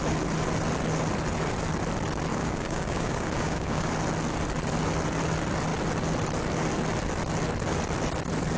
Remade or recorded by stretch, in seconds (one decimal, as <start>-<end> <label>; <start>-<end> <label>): 0.0-2.3 recorded; 2.3-3.9 remade; 3.9-8.6 recorded